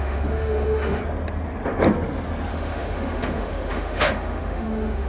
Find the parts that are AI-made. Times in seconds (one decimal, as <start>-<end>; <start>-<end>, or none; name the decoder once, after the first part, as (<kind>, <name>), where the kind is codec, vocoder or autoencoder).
0.0-1.0 (autoencoder, DAC-VAE); 2.5-5.1